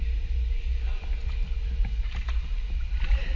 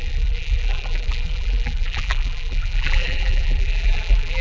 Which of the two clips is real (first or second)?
first